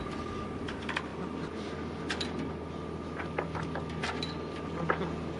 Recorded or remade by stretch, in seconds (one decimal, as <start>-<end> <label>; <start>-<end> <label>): 0.0-5.4 recorded